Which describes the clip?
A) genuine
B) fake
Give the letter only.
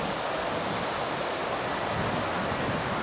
A